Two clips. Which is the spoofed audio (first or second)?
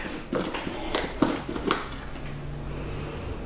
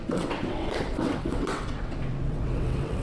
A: second